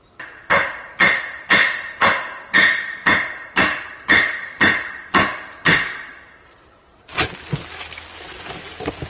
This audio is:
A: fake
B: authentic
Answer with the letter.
B